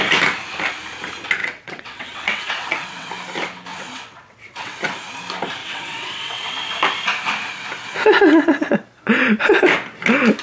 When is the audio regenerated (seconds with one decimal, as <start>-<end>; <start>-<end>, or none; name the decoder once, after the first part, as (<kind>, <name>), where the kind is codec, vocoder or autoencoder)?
1.4-3.1 (vocoder, WaveNeXt); 3.7-4.8; 5.6-6.5